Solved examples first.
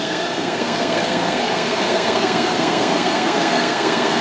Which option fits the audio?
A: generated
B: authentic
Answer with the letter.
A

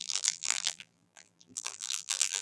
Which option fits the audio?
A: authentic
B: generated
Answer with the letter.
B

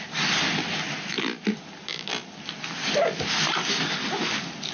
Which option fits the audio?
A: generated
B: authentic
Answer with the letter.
B